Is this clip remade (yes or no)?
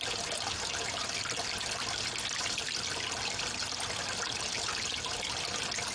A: no